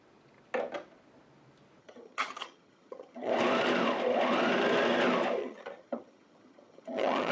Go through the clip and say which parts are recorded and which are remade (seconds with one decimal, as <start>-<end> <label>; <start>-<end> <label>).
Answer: 0.0-1.8 recorded; 1.8-3.3 remade; 3.3-5.4 recorded; 5.4-7.3 remade